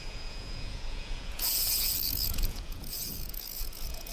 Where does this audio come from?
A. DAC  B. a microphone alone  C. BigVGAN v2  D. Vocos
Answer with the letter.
D